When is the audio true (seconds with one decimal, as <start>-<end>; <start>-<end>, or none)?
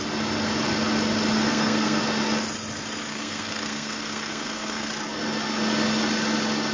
0.0-1.5; 2.0-3.1; 4.9-6.7